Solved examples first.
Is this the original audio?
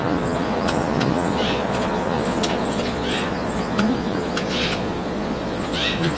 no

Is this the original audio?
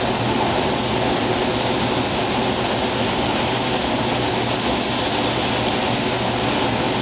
yes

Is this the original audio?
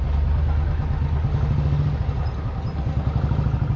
yes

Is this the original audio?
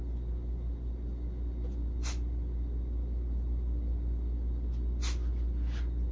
yes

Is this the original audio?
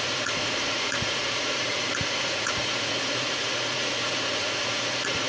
no